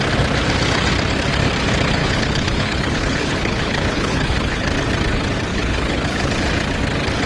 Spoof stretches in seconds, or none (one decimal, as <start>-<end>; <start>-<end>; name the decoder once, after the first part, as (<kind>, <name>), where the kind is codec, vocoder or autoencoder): 2.0-4.7 (codec, HILCodec); 5.5-6.3